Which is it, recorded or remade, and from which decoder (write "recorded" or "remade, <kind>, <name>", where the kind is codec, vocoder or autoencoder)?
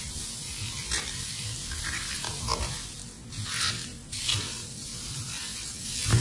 recorded